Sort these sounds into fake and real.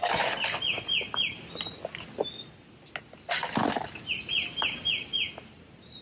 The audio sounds real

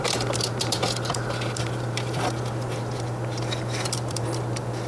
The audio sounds fake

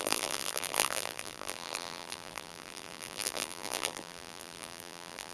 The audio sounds fake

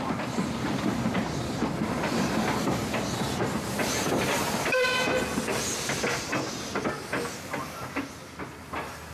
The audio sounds real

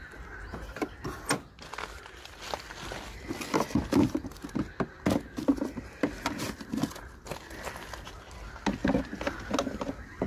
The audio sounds real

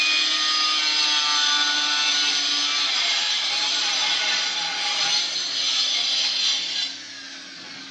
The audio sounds real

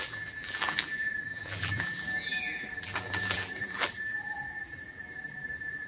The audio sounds fake